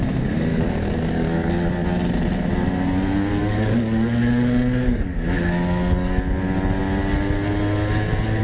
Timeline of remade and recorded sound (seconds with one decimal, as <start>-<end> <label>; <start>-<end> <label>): 0.0-0.5 recorded; 0.5-1.5 remade; 1.5-3.4 recorded; 3.4-6.2 remade; 6.2-8.4 recorded